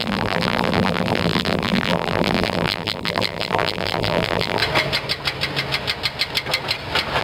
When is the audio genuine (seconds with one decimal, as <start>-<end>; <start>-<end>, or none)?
4.6-7.2